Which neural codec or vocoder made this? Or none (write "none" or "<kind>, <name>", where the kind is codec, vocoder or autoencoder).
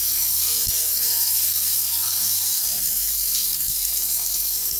codec, SNAC